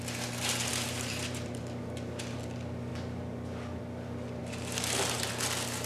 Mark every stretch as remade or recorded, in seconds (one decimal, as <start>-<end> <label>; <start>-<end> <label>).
0.0-0.7 recorded; 0.7-1.6 remade; 1.6-4.4 recorded; 4.4-5.3 remade; 5.3-5.9 recorded